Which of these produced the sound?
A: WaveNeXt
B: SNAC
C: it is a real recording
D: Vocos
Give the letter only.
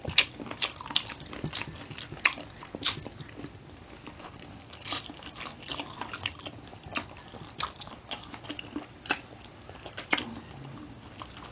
C